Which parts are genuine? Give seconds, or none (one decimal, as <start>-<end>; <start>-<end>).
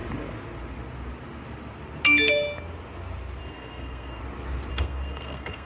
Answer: 0.0-3.4; 4.2-4.7